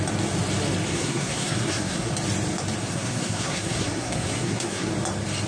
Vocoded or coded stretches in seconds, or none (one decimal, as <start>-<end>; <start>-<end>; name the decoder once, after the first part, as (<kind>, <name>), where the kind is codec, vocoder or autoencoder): 0.9-2.1 (codec, SNAC); 2.8-4.9